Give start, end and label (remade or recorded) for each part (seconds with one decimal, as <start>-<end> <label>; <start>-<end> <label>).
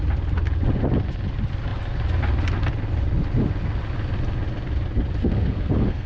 0.0-5.2 recorded; 5.2-6.1 remade